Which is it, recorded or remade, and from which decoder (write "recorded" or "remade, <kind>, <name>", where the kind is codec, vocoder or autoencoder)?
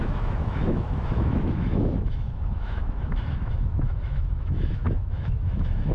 remade, autoencoder, DAC-VAE